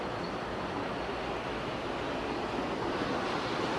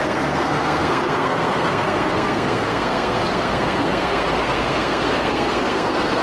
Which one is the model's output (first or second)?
second